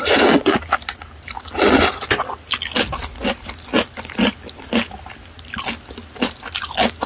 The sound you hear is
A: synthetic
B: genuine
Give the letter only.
B